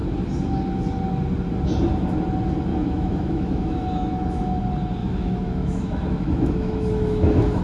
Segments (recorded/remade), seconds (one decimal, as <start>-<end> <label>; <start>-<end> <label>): 0.0-2.7 recorded; 2.7-4.6 remade; 4.6-5.0 recorded; 5.0-7.6 remade